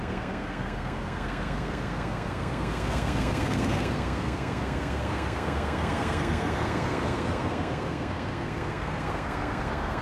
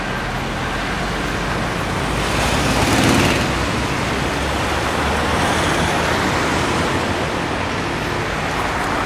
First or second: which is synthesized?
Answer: first